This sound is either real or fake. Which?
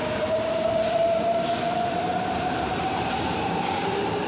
fake